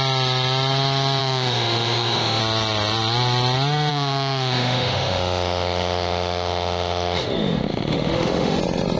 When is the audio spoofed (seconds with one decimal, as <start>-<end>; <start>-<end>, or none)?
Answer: 1.2-2.4; 3.9-8.6